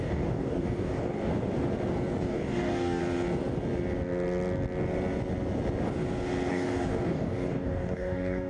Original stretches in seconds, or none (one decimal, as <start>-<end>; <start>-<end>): 1.3-2.2; 3.0-6.5